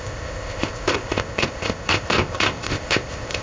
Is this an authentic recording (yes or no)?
no